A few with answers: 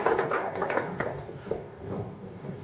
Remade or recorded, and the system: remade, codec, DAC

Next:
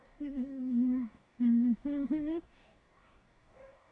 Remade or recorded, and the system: remade, codec, DAC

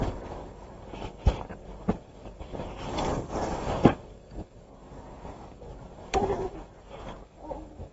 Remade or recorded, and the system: remade, codec, DAC